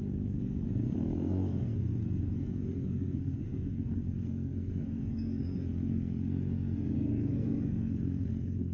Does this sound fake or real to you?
fake